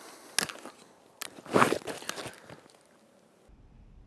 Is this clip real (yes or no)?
yes